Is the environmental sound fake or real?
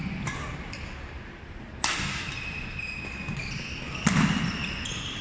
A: real